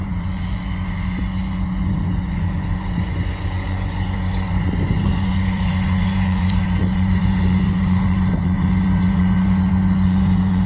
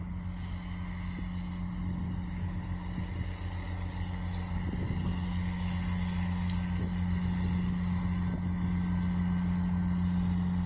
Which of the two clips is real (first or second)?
second